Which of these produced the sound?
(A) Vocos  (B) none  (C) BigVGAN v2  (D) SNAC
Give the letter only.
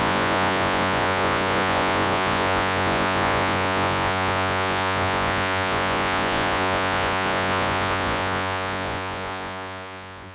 A